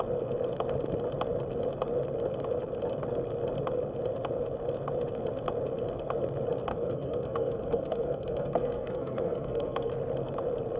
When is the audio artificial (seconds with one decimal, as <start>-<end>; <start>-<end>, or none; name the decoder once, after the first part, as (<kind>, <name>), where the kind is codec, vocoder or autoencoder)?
6.7-9.9 (codec, SNAC)